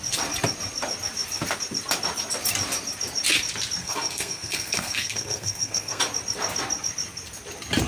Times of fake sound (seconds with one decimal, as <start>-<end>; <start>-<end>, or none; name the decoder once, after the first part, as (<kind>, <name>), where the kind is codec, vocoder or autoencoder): 3.8-6.0 (codec, SNAC)